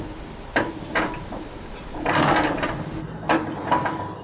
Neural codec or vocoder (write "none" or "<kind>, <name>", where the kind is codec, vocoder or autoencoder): vocoder, BigVGAN v2